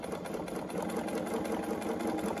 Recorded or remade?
recorded